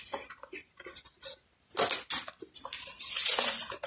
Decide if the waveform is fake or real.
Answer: real